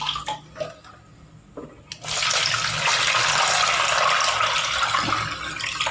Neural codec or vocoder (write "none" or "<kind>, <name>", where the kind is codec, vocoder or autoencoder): none